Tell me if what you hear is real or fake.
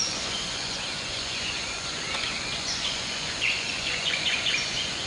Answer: fake